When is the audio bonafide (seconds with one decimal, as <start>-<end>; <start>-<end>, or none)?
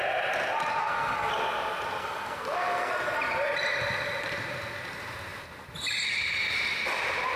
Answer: 0.0-0.8; 1.3-2.0; 2.9-7.4